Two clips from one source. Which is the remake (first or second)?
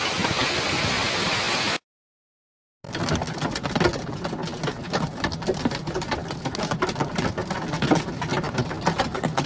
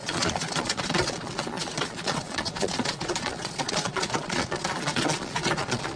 second